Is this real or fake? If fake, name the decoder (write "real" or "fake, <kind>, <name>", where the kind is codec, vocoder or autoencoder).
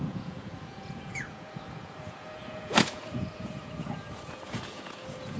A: fake, vocoder, Vocos